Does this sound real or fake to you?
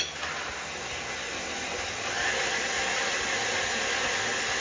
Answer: real